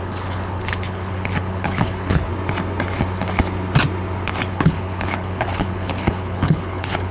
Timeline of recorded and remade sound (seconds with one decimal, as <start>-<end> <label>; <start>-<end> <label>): 0.0-2.3 remade; 2.3-4.5 recorded; 4.5-7.1 remade